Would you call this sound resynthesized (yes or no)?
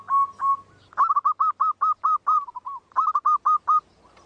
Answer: no